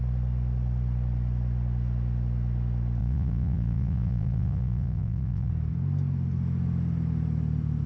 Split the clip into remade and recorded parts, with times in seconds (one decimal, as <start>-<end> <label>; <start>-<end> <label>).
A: 0.0-3.0 recorded; 3.0-5.5 remade; 5.5-7.9 recorded